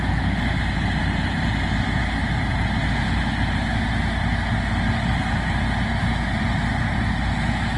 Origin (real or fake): real